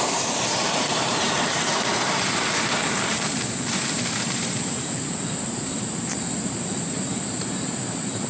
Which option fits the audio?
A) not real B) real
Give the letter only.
A